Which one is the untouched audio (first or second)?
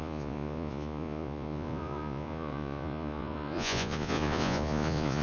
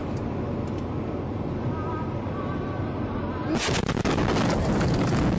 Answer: second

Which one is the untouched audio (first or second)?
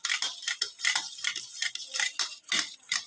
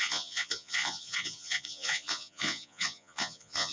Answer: first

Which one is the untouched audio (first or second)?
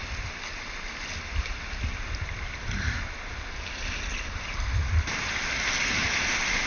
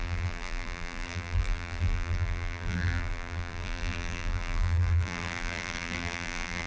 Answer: first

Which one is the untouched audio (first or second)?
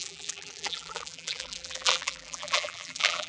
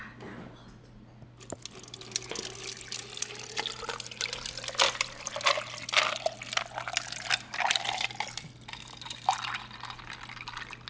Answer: second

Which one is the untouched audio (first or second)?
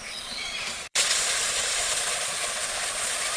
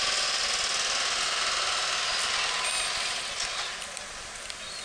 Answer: second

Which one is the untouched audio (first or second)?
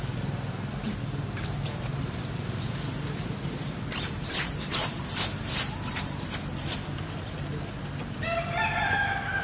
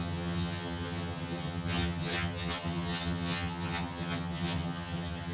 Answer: first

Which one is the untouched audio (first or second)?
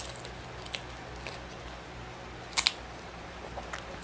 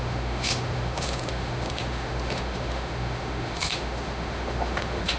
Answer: first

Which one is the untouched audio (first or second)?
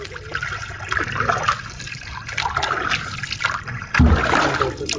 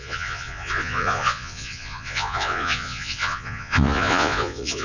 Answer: first